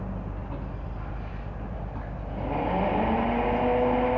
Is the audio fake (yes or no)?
no